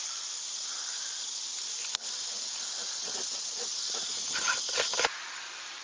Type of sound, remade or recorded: remade